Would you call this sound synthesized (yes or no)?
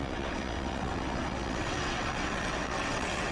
yes